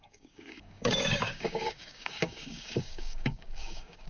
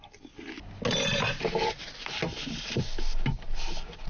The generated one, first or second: first